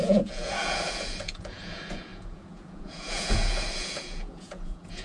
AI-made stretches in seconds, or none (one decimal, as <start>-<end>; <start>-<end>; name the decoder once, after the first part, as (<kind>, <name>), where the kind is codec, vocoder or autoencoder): 0.0-5.0 (vocoder, Vocos)